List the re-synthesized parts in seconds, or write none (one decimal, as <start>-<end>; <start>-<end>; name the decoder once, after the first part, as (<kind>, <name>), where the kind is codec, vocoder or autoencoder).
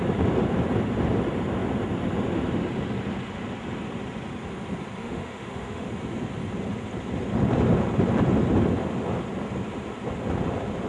5.0-5.9 (autoencoder, DAC-VAE)